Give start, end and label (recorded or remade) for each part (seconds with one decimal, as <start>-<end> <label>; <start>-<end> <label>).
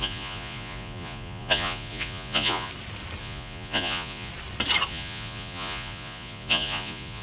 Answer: 0.0-2.7 remade; 2.7-3.2 recorded; 3.2-4.3 remade; 4.3-4.9 recorded; 4.9-7.2 remade